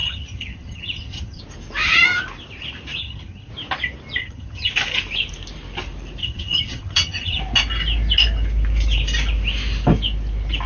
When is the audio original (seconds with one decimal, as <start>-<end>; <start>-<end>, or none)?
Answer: 1.4-3.0; 3.5-4.2; 4.7-6.2; 7.4-10.7